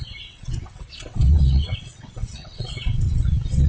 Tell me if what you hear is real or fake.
fake